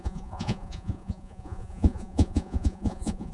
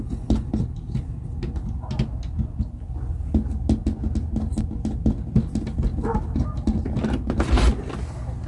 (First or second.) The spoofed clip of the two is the first